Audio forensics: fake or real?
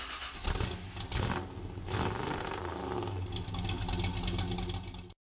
real